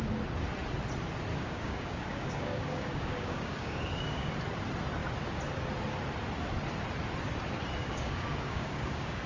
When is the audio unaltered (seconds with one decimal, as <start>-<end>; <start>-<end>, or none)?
0.0-1.3; 4.3-7.8